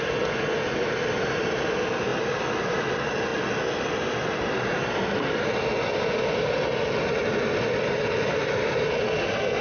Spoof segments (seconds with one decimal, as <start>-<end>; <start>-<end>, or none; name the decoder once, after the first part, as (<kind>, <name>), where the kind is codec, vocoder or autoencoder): none